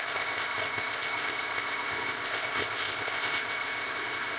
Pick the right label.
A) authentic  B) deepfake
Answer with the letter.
B